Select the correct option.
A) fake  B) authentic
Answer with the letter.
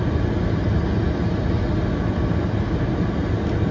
B